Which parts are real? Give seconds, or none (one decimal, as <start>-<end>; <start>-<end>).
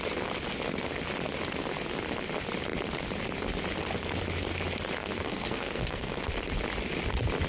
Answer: 0.0-5.0; 6.2-7.5